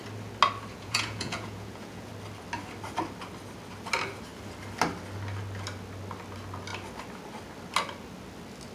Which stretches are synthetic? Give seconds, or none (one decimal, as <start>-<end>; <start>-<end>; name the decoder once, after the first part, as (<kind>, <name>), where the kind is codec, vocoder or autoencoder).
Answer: 0.7-2.1 (vocoder, Vocos)